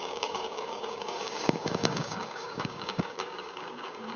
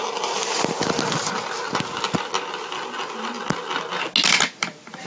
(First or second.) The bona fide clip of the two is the second